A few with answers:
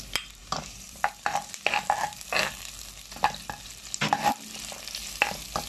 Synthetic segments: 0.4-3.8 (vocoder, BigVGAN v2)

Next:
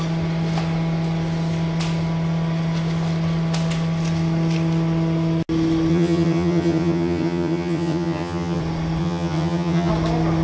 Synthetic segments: 5.9-8.6 (vocoder, HiFi-GAN); 9.0-9.9

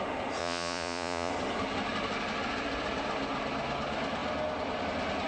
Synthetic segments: 0.4-1.3 (vocoder, Vocos)

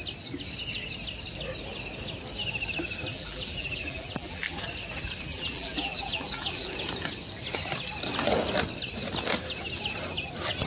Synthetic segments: 3.1-4.6 (vocoder, BigVGAN v2); 5.3-6.7

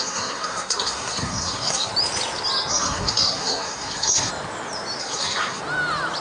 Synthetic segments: 0.0-1.9 (codec, SNAC); 2.7-4.3; 5.0-5.6

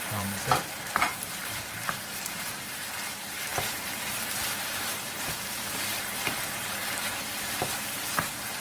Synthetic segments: 0.0-8.6 (vocoder, BigVGAN v2)